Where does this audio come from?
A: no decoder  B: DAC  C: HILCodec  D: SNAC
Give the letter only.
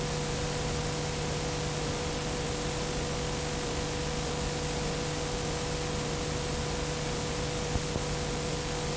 A